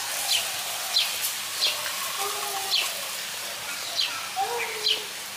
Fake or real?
real